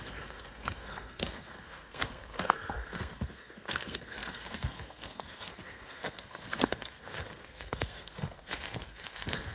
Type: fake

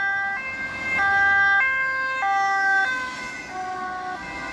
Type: real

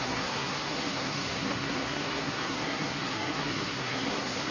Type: fake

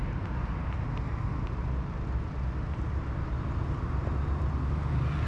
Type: real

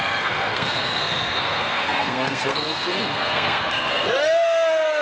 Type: fake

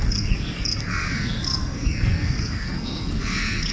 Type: fake